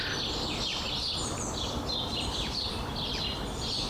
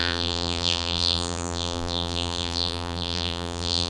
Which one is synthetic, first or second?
second